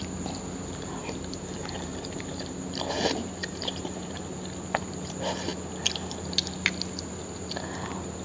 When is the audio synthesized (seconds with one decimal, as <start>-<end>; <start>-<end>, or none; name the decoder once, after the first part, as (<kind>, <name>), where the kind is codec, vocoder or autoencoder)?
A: 1.0-2.5 (vocoder, BigVGAN v2); 3.4-4.2